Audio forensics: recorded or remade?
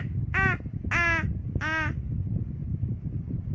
recorded